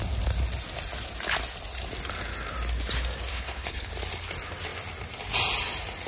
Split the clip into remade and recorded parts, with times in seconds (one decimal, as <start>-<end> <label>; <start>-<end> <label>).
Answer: 0.0-3.3 recorded; 3.3-3.9 remade; 3.9-6.1 recorded